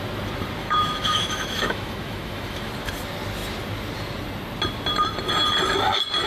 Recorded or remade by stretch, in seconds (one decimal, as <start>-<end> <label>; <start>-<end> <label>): 0.0-0.6 recorded; 0.6-2.7 remade; 2.7-6.3 recorded